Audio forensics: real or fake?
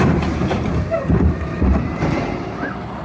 fake